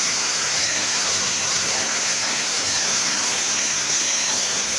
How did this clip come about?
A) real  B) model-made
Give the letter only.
B